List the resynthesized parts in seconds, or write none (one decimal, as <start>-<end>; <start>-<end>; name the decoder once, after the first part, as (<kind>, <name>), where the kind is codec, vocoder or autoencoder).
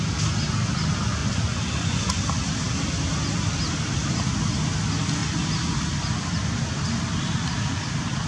1.2-2.2 (vocoder, Vocos)